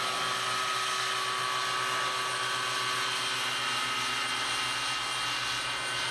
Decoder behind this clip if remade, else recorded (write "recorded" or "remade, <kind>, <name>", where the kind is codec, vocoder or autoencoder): recorded